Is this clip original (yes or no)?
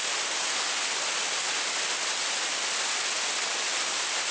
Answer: yes